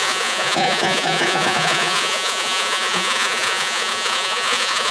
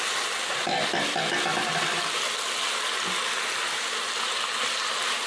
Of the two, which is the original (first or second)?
second